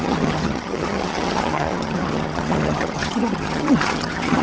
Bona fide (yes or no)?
no